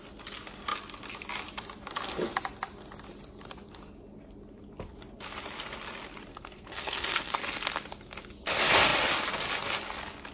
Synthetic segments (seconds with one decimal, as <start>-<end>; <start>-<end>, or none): 6.3-7.4